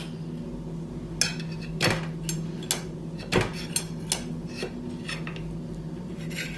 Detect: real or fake real